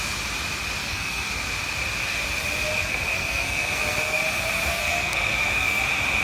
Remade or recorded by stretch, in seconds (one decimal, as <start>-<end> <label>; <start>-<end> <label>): 0.0-0.8 recorded; 0.8-1.3 remade; 1.3-2.8 recorded; 2.8-4.2 remade; 4.2-4.7 recorded; 4.7-5.8 remade; 5.8-6.2 recorded